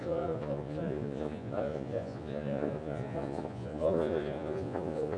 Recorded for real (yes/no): no